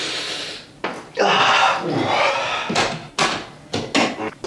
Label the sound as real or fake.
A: real